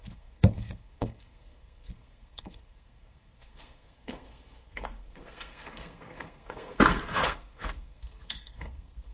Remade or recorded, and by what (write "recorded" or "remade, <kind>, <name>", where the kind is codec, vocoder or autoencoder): remade, codec, SNAC